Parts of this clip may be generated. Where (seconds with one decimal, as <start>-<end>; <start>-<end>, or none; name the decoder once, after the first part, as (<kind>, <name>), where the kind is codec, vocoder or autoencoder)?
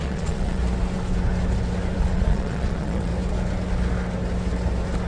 0.0-0.6 (vocoder, Vocos); 2.0-3.1